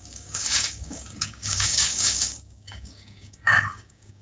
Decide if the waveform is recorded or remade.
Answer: remade